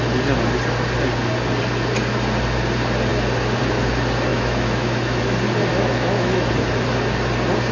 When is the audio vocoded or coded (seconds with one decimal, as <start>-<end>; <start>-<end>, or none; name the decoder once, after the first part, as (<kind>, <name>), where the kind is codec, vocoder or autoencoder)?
4.3-5.2 (autoencoder, DAC-VAE); 5.7-6.5